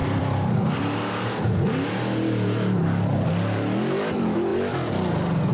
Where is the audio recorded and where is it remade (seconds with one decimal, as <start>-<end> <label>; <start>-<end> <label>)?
0.0-0.8 remade; 0.8-5.5 recorded